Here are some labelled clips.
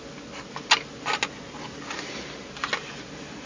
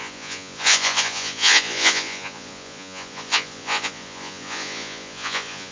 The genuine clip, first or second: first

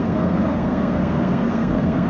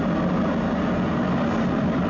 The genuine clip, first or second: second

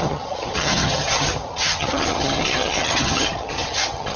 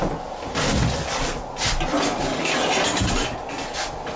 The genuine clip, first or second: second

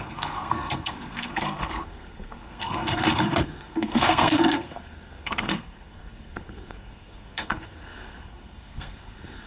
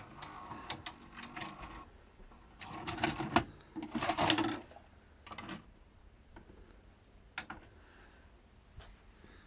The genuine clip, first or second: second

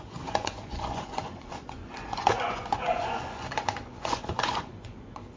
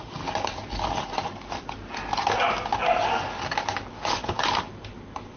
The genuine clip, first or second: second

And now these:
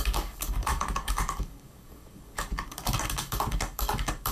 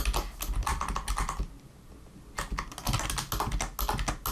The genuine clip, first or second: second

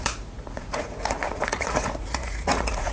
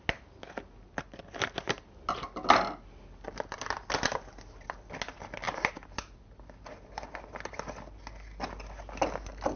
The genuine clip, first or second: second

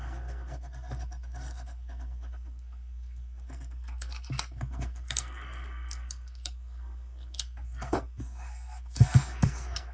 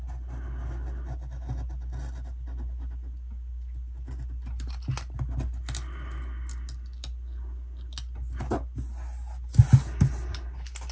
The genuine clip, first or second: second